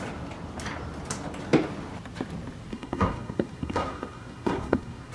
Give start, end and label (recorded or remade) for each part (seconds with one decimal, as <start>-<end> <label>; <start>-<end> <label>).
0.0-2.7 recorded; 2.7-5.1 remade